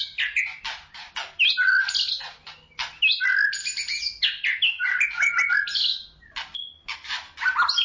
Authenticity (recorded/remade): recorded